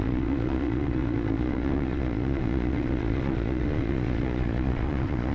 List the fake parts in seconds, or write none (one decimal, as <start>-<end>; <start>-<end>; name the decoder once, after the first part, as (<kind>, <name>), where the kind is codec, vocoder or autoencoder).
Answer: 0.0-5.3 (vocoder, Vocos)